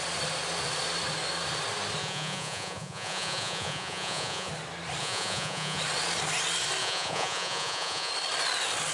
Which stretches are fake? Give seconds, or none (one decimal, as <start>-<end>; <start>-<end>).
2.0-4.5; 5.0-5.8; 6.8-8.1